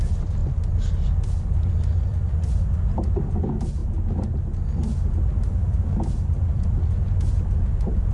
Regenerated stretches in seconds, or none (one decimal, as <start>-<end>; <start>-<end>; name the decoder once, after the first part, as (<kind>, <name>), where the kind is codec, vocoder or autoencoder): none